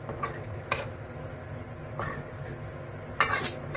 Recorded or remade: recorded